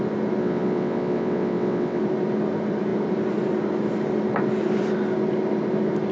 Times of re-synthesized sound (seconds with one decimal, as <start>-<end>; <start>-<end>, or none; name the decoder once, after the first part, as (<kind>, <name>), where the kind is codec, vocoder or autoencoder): 0.4-2.0 (vocoder, WaveNeXt)